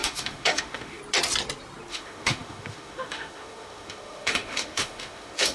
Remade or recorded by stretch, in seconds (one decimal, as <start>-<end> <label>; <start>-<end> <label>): 0.0-1.0 remade; 1.0-1.9 recorded; 1.9-5.5 remade